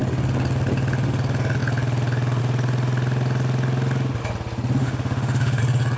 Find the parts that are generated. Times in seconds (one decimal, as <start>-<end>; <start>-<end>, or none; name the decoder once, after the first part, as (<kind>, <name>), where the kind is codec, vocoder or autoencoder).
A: 4.8-5.6 (autoencoder, DAC-VAE)